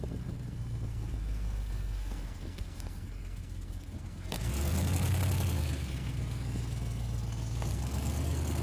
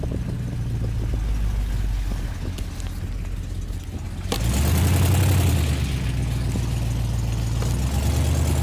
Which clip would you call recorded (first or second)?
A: second